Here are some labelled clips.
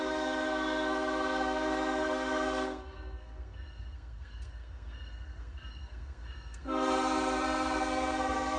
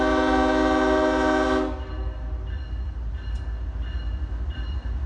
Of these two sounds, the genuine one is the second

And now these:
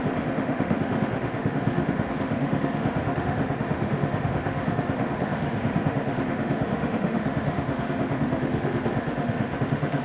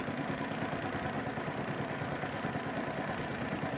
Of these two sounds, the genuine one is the second